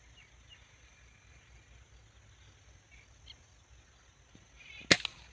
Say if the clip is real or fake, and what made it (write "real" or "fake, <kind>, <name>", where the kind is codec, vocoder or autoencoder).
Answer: real